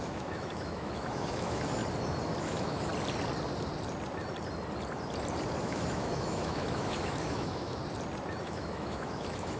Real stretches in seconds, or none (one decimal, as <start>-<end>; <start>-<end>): 1.8-2.4; 2.9-5.6; 7.8-8.4